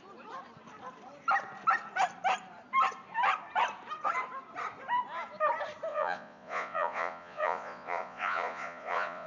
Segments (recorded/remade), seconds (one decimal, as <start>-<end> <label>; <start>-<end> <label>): 0.0-5.9 recorded; 5.9-9.3 remade